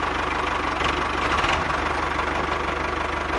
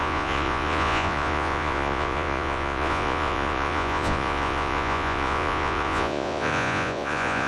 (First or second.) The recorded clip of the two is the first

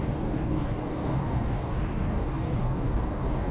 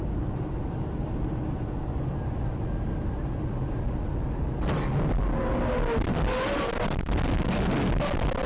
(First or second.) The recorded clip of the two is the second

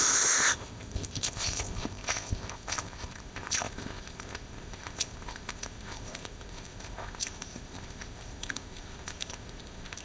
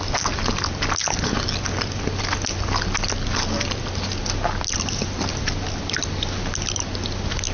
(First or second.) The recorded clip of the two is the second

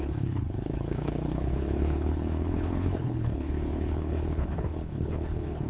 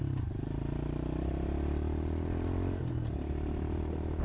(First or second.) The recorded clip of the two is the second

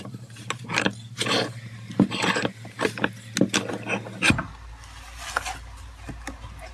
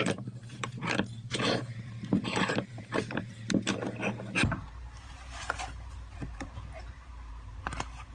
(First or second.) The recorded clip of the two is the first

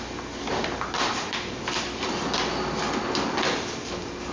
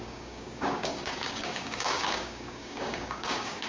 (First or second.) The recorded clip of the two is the first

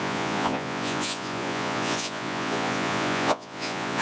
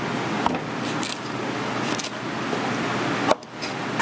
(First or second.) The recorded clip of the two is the second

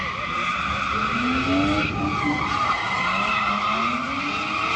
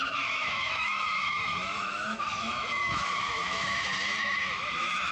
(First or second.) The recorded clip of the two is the first